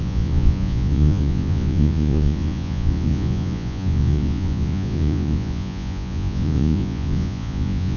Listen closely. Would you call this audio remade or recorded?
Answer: remade